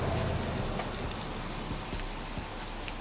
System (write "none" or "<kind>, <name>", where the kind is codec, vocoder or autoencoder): none